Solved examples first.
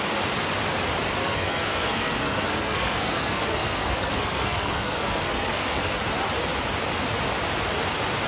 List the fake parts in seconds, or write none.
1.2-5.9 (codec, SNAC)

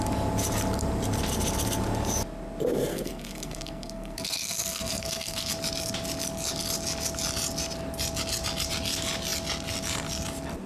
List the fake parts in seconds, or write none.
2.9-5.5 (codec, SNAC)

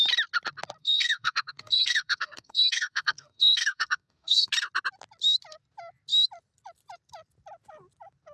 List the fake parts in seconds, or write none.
0.8-4.5 (codec, SNAC)

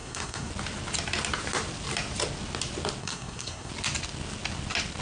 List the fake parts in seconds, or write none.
0.0-0.5 (codec, SNAC); 3.0-3.7